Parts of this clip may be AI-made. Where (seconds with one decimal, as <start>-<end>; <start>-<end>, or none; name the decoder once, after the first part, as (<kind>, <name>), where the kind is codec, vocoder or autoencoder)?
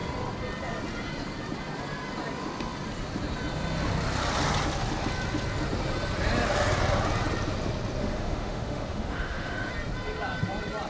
8.0-9.7 (autoencoder, DAC-VAE)